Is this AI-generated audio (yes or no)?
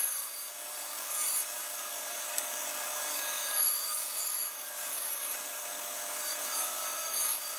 yes